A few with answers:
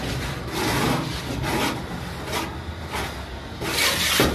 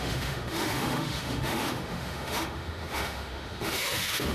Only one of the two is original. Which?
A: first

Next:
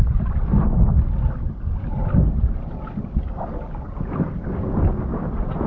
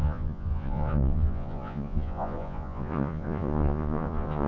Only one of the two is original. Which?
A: first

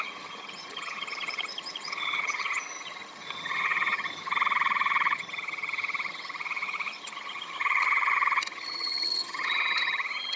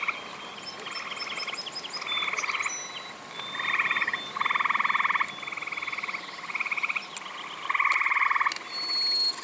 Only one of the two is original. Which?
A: second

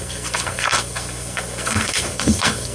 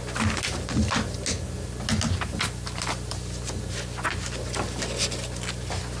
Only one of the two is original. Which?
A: second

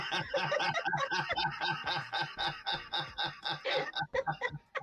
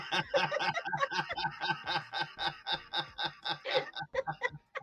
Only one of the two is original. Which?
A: second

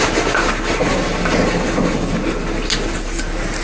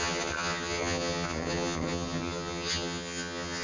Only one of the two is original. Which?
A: first